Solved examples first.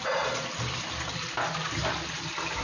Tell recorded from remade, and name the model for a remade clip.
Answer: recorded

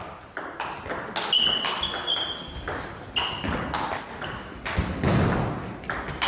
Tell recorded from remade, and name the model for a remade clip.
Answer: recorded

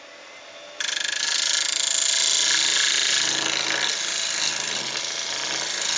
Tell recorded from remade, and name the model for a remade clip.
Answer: recorded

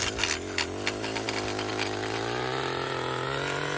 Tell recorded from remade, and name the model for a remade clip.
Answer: recorded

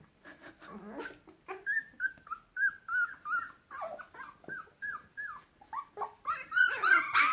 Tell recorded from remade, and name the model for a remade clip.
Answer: recorded